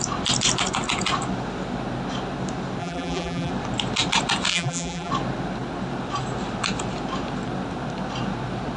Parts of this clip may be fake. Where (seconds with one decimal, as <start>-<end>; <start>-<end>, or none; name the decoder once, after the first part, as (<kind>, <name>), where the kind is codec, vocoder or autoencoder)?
2.8-3.5 (vocoder, BigVGAN v2); 4.5-5.1